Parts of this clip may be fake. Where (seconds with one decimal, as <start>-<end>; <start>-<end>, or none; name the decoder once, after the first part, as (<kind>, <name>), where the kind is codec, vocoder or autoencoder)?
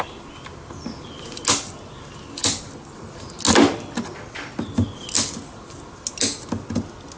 none